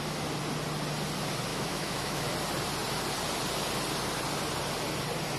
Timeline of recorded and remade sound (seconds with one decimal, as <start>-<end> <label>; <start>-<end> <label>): 0.0-1.5 recorded; 1.5-2.2 remade; 2.2-5.4 recorded